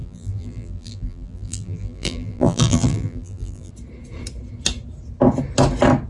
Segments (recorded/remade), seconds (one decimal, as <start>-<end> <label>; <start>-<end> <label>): 0.0-3.7 remade; 3.7-6.1 recorded